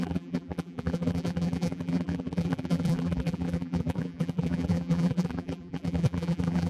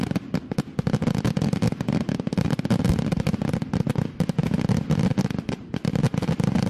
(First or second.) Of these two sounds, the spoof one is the first